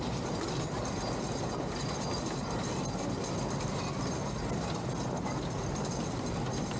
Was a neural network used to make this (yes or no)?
no